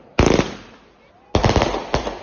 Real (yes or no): yes